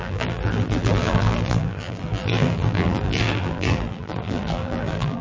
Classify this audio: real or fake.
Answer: fake